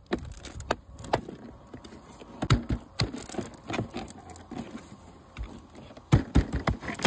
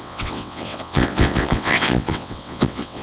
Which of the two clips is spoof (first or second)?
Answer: second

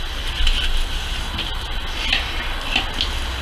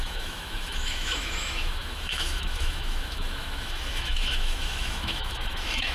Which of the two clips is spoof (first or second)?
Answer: second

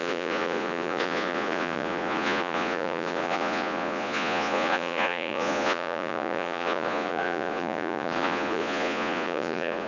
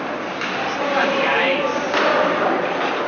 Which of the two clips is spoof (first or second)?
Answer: first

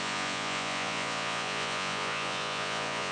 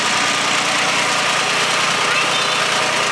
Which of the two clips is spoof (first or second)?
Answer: first